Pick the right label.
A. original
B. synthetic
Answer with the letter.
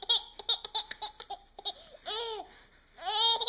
A